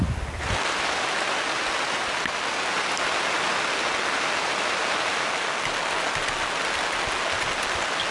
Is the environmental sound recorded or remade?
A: recorded